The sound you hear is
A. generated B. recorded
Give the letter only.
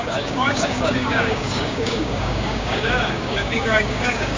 A